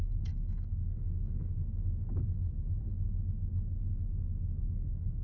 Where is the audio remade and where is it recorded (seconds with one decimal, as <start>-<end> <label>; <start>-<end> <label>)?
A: 0.0-1.5 remade; 1.5-4.6 recorded; 4.6-5.2 remade